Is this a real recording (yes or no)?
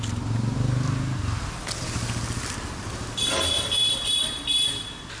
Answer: yes